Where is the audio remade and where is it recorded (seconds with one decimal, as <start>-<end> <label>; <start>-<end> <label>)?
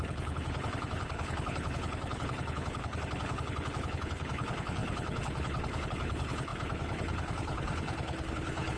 0.0-8.8 remade